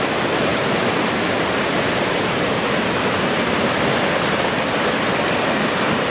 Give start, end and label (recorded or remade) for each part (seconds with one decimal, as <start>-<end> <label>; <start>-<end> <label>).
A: 0.0-6.1 recorded